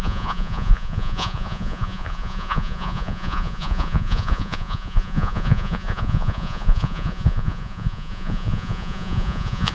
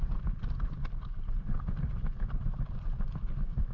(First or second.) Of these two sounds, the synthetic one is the first